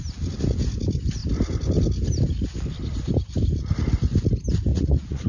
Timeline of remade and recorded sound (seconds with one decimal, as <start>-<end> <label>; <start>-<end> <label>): 0.0-4.7 recorded; 4.7-5.3 remade